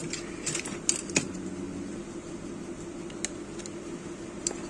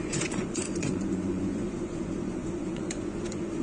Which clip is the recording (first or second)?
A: first